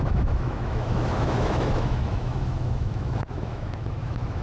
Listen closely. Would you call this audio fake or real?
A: fake